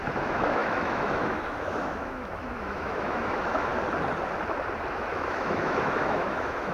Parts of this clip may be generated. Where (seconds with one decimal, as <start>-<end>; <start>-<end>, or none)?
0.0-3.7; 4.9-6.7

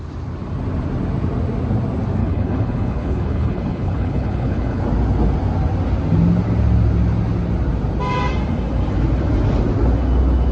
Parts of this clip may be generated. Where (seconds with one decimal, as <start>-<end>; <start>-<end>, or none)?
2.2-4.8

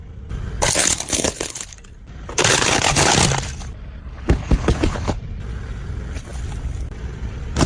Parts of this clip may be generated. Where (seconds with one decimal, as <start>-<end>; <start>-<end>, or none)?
0.8-1.8; 2.5-3.1; 4.0-5.2

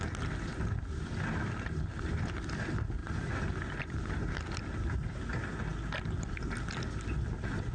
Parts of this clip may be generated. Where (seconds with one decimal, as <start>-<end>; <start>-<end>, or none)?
none

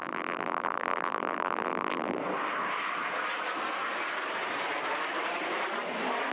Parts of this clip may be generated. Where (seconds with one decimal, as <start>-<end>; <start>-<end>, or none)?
0.0-2.2